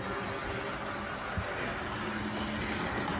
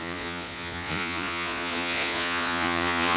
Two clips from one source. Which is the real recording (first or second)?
first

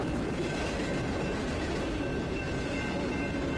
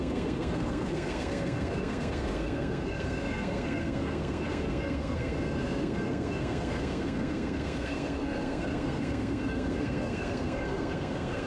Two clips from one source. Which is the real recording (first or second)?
first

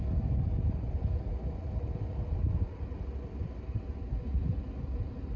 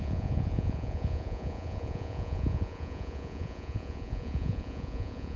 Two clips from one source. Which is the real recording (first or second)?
first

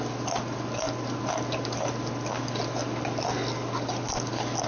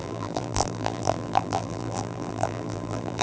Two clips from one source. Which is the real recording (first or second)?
first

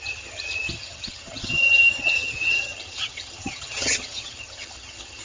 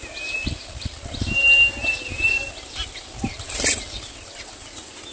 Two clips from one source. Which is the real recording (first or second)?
second